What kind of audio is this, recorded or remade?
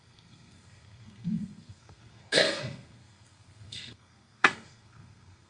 remade